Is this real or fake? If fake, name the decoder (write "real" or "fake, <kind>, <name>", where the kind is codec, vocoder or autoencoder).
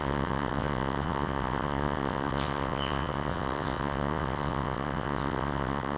fake, vocoder, WaveNeXt